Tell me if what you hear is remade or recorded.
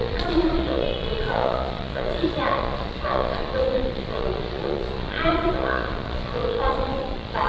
remade